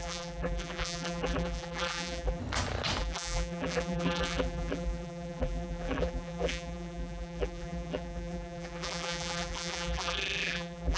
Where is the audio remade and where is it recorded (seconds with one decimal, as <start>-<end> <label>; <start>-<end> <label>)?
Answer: 0.0-2.4 remade; 2.4-3.0 recorded; 3.0-11.0 remade